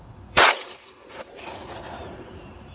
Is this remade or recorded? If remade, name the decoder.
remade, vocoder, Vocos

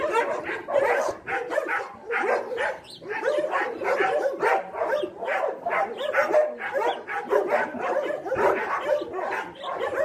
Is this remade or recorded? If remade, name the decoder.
recorded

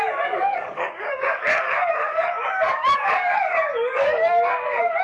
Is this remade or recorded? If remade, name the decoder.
remade, codec, DAC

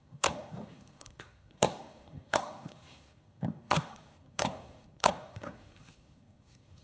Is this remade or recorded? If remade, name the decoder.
remade, codec, SNAC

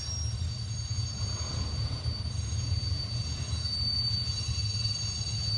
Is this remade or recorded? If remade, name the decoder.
recorded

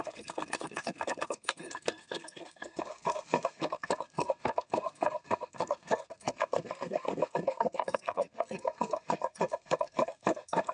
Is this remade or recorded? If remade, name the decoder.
remade, codec, SNAC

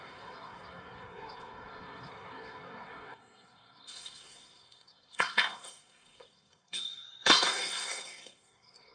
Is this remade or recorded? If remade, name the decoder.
remade, codec, SNAC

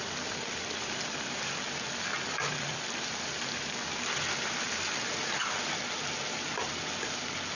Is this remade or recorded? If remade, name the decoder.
recorded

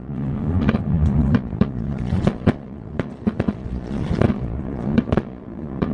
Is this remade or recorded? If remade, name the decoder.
remade, vocoder, Vocos